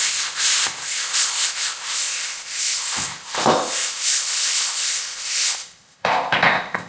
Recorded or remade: remade